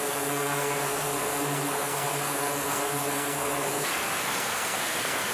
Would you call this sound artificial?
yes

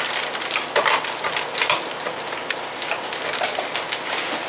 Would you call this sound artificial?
no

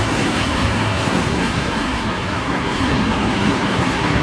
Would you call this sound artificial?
yes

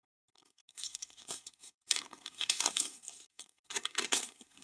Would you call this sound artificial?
yes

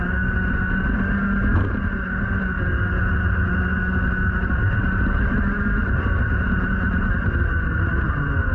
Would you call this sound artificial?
no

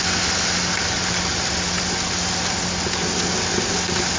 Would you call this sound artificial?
no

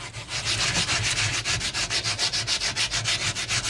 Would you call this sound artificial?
no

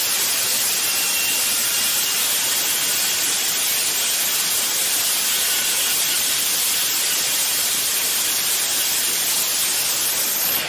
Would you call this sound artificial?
no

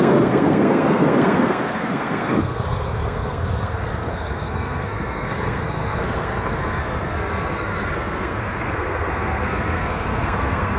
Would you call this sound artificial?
yes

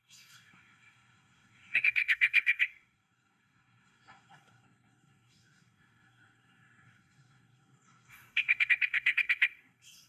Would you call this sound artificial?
yes